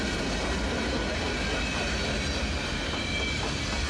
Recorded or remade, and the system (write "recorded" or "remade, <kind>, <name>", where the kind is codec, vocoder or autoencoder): recorded